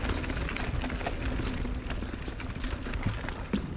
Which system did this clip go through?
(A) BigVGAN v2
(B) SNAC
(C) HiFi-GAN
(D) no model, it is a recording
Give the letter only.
D